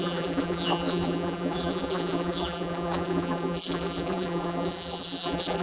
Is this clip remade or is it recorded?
remade